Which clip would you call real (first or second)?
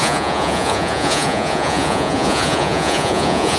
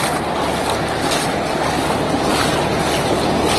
second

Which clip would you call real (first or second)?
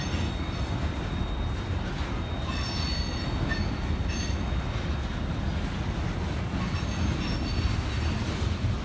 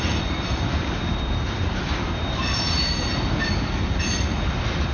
first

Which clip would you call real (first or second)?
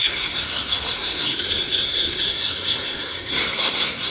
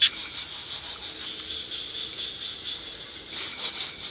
second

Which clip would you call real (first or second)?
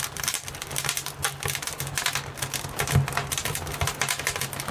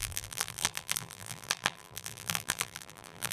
first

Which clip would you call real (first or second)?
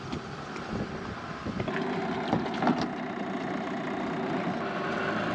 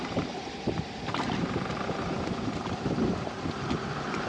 first